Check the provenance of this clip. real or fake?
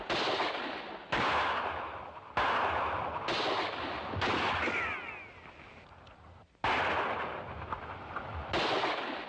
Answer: real